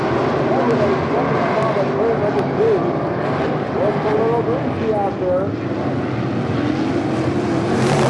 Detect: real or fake real